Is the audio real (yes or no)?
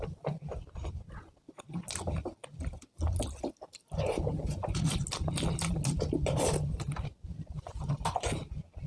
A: yes